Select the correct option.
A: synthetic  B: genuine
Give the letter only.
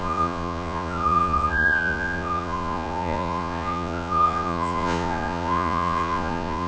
A